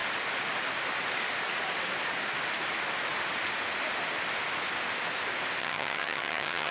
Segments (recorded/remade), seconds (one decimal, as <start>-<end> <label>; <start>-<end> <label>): 0.0-5.6 recorded; 5.6-6.7 remade

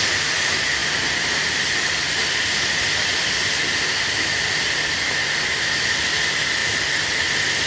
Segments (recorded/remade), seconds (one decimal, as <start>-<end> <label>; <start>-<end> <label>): 0.0-7.7 recorded